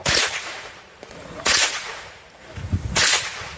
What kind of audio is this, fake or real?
fake